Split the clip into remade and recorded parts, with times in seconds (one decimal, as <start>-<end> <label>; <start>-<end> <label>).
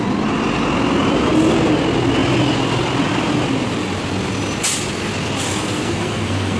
0.0-5.5 recorded; 5.5-6.6 remade